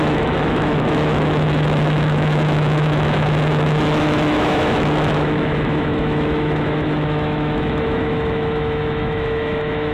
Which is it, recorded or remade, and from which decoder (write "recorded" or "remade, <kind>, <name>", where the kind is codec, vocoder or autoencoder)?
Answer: remade, autoencoder, DAC-VAE